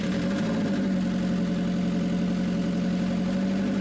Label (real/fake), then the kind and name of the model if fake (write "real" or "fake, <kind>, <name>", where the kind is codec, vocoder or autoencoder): real